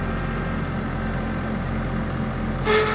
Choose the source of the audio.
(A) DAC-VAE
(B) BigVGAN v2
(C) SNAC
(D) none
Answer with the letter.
D